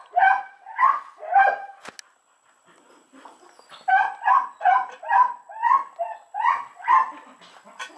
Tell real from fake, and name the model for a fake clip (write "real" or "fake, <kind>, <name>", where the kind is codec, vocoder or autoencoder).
real